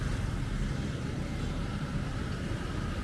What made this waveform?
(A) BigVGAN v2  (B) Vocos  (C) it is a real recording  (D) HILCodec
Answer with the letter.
C